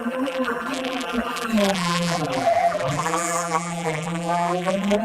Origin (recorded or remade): remade